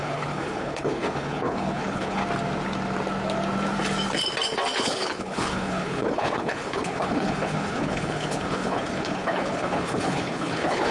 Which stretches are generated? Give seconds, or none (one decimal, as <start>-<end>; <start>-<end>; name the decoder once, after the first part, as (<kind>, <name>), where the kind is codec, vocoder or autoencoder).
0.0-2.2 (codec, HILCodec); 4.8-10.9